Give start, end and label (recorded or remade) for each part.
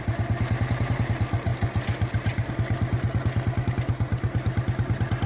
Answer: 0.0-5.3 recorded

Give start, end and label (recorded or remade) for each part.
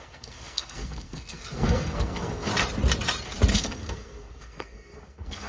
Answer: 0.0-2.5 remade; 2.5-3.5 recorded; 3.5-5.5 remade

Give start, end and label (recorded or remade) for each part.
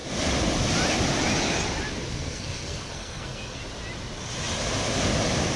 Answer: 0.0-2.1 recorded; 2.1-3.6 remade; 3.6-5.6 recorded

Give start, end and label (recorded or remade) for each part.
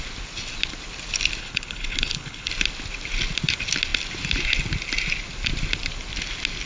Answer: 0.0-1.4 recorded; 1.4-2.5 remade; 2.5-6.7 recorded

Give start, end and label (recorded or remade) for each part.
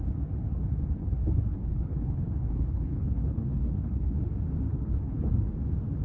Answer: 0.0-1.0 recorded; 1.0-4.2 remade; 4.2-4.7 recorded; 4.7-5.3 remade; 5.3-6.0 recorded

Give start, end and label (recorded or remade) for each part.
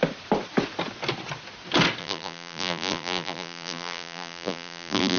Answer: 0.0-2.0 recorded; 2.0-5.2 remade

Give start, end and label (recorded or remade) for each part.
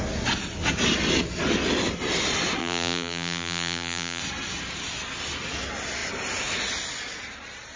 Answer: 0.0-2.6 recorded; 2.6-4.2 remade; 4.2-7.8 recorded